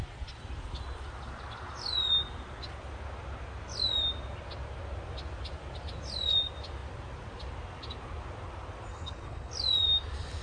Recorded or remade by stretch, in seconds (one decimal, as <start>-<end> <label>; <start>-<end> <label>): 0.0-8.9 recorded; 8.9-9.5 remade; 9.5-10.4 recorded